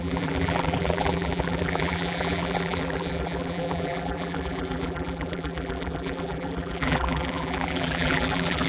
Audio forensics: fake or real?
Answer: fake